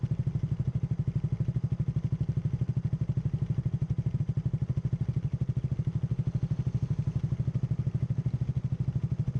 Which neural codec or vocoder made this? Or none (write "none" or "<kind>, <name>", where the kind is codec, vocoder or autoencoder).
none